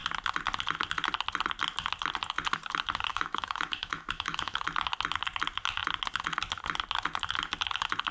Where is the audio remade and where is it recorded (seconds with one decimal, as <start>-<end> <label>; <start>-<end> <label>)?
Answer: 0.0-3.1 recorded; 3.1-4.6 remade; 4.6-8.1 recorded